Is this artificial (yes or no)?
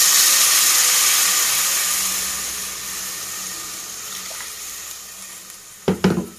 no